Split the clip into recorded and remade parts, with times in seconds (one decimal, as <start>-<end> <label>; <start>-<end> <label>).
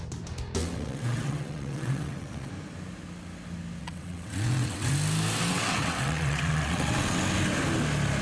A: 0.0-0.6 recorded; 0.6-2.5 remade; 2.5-3.8 recorded; 3.8-4.9 remade; 4.9-5.5 recorded; 5.5-7.2 remade; 7.2-8.2 recorded